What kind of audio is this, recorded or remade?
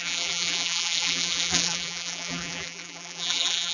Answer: remade